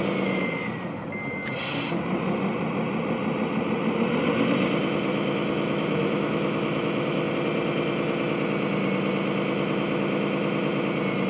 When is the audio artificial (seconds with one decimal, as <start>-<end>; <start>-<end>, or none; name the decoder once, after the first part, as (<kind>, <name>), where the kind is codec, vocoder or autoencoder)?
5.1-7.3 (autoencoder, DAC-VAE)